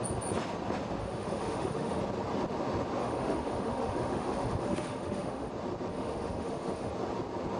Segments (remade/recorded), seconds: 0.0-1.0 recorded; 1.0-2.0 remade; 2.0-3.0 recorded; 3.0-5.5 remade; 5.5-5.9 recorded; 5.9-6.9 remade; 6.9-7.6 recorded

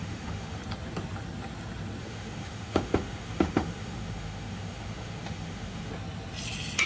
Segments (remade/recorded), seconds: 0.0-0.6 remade; 0.6-2.0 recorded; 2.0-5.9 remade; 5.9-6.9 recorded